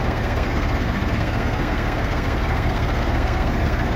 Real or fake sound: fake